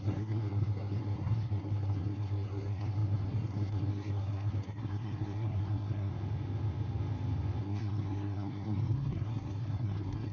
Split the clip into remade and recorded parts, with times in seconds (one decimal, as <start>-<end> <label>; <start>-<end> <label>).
0.0-6.1 remade; 6.1-7.6 recorded; 7.6-10.3 remade